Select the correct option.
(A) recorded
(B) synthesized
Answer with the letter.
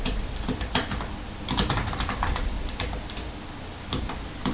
B